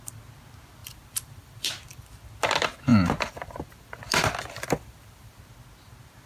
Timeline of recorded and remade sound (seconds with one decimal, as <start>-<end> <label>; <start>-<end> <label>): 0.0-0.8 recorded; 0.8-2.1 remade; 2.1-2.9 recorded; 2.9-5.4 remade; 5.4-6.3 recorded